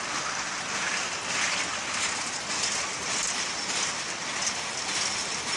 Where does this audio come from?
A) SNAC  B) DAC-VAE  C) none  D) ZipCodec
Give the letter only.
C